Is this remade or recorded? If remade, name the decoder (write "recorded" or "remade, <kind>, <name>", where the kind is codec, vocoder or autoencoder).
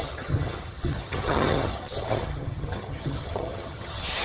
remade, vocoder, HiFi-GAN